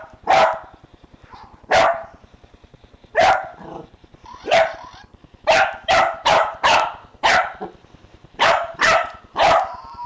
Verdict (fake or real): fake